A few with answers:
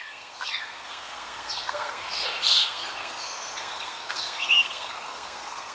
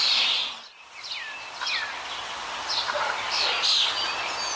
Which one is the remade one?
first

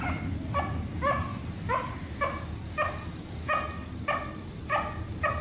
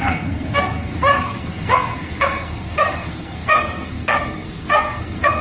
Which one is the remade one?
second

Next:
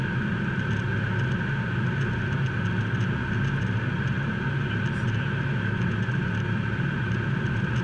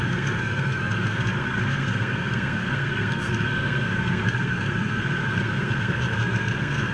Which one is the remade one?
second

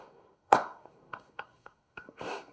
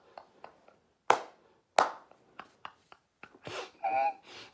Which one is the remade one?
first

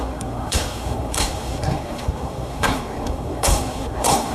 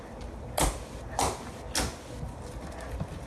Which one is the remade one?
first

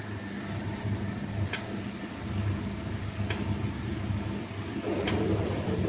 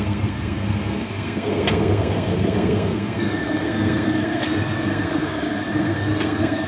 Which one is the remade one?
second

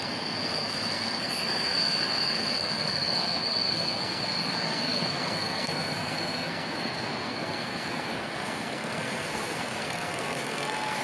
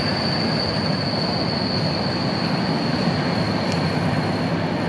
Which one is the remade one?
first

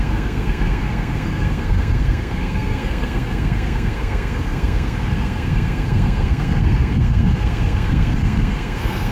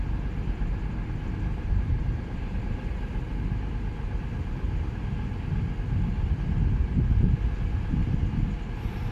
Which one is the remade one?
first